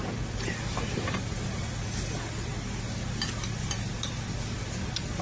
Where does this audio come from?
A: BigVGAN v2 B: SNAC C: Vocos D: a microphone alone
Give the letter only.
D